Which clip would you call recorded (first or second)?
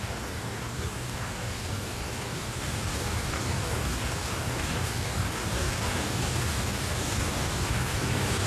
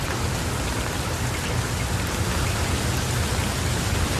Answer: second